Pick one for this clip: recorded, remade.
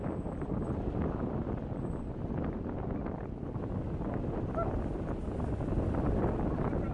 recorded